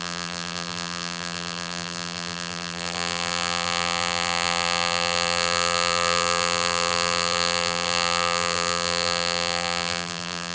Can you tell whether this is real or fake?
fake